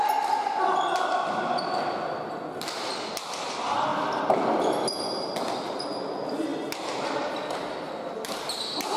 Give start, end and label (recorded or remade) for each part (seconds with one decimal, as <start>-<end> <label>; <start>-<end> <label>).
0.0-9.0 recorded